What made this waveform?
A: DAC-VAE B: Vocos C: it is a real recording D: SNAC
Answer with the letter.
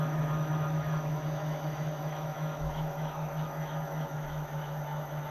A